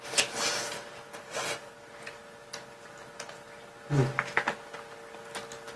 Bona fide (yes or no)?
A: yes